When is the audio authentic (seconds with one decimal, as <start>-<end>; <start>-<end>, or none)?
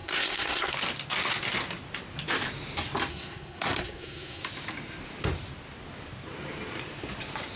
0.7-3.1; 4.4-7.6